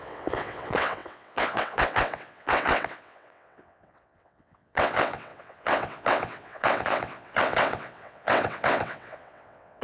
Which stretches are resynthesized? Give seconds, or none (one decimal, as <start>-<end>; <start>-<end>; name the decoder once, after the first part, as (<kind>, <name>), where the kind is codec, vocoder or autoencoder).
0.0-9.8 (vocoder, WaveNeXt)